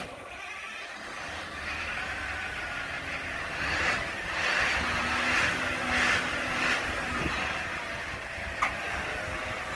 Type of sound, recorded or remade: recorded